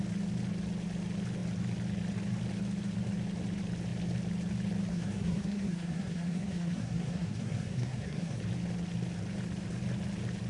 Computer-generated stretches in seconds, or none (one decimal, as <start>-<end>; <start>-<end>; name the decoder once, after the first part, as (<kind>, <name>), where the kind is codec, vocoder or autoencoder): 4.9-8.4 (codec, SNAC)